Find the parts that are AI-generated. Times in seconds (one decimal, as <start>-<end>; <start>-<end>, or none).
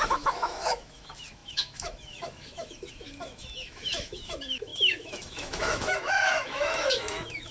0.0-7.5